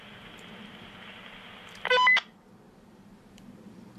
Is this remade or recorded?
remade